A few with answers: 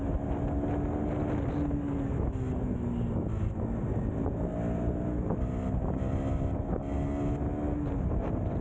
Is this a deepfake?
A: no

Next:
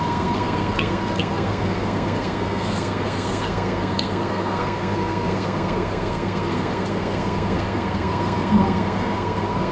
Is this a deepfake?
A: yes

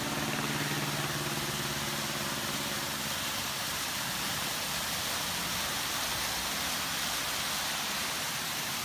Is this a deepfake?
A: no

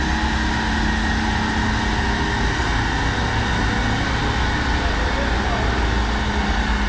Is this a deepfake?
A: no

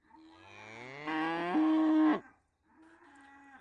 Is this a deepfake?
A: no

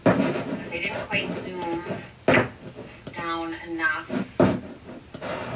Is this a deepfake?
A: no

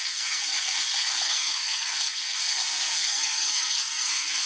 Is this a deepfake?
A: yes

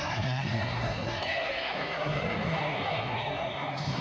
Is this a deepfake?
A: yes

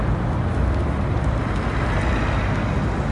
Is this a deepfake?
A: no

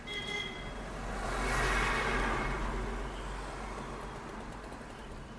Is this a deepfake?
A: no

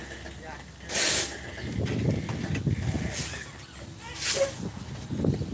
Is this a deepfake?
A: no